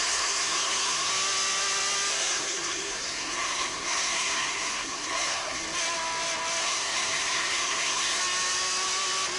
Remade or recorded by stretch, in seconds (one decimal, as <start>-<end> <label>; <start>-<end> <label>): 0.0-1.1 remade; 1.1-2.1 recorded; 2.1-5.6 remade; 5.6-6.6 recorded; 6.6-8.2 remade; 8.2-9.4 recorded